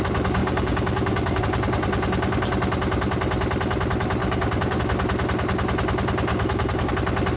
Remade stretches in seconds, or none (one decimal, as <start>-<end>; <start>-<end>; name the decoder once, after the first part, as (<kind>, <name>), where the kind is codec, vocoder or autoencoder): 0.4-1.4 (codec, DAC); 4.2-4.8; 6.3-6.9